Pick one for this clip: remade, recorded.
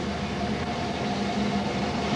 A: recorded